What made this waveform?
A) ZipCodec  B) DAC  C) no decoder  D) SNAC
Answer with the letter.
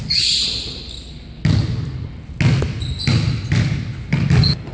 C